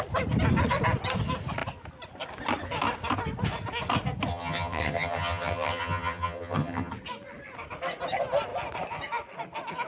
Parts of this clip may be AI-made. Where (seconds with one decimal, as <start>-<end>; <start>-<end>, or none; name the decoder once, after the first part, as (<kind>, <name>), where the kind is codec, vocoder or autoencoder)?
4.3-6.9 (vocoder, HiFi-GAN)